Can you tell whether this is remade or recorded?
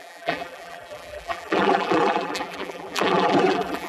remade